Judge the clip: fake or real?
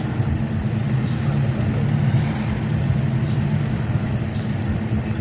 real